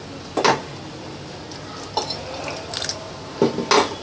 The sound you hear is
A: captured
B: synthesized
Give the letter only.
A